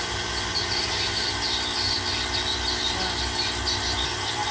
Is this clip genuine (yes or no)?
yes